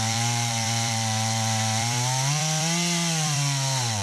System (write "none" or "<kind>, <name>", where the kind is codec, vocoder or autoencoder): vocoder, BigVGAN v2